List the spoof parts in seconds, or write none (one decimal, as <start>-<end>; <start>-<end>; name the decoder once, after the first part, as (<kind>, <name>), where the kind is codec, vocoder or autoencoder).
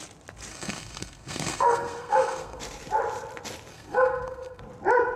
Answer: 0.5-2.6 (codec, SNAC); 3.7-4.6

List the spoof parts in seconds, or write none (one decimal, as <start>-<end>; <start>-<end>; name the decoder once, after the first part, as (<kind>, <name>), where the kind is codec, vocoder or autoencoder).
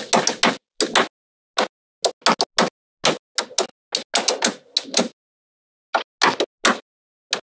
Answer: none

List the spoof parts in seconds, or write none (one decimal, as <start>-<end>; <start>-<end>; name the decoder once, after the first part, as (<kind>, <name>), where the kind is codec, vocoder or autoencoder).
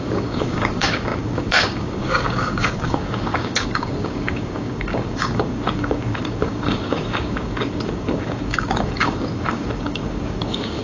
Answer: 0.0-10.8 (codec, DAC)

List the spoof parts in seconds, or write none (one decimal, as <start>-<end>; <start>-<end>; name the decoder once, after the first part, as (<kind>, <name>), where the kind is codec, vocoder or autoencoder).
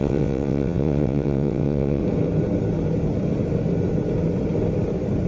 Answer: 0.0-2.0 (vocoder, WaveNeXt)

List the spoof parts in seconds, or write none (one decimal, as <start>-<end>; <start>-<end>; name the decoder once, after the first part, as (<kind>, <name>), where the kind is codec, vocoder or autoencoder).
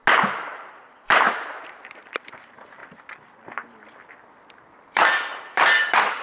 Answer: 0.8-6.2 (vocoder, BigVGAN v2)